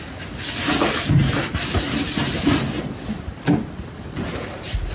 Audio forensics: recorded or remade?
recorded